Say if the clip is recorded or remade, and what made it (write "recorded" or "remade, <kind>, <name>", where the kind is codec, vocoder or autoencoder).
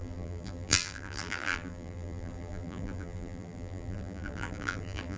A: remade, vocoder, BigVGAN v2